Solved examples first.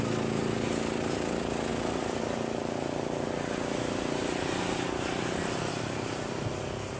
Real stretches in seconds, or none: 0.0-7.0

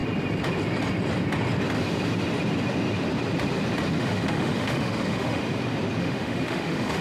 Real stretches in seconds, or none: 0.0-4.0; 5.4-6.0

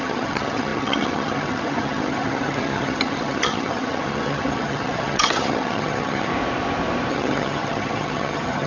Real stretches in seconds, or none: 6.3-7.1

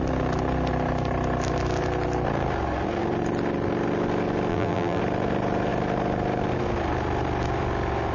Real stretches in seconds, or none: 0.0-4.5; 5.0-8.1